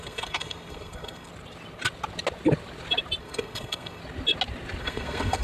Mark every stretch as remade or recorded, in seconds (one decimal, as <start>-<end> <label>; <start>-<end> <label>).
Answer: 0.0-1.3 remade; 1.3-3.2 recorded; 3.2-4.0 remade; 4.0-4.8 recorded; 4.8-5.4 remade